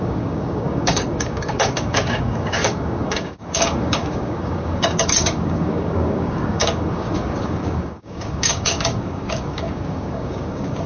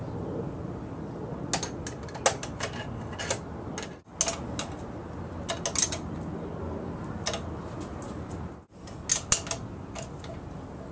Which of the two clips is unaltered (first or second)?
second